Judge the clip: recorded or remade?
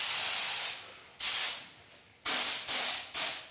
recorded